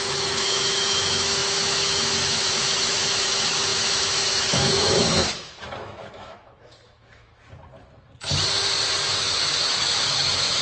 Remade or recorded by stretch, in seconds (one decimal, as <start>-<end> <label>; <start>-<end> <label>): 0.0-7.3 remade; 7.3-9.1 recorded; 9.1-10.6 remade